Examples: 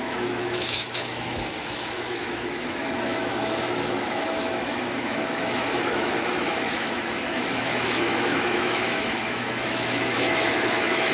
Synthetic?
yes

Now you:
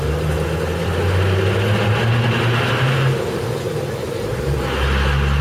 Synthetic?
no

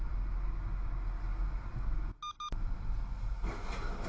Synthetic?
no